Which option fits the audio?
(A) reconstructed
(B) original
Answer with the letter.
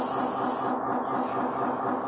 B